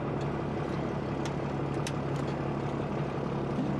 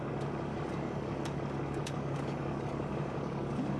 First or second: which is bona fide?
first